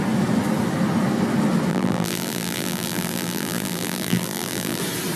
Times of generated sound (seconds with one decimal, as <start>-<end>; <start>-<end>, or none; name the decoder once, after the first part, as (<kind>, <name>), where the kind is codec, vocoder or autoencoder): 1.7-4.8 (vocoder, BigVGAN v2)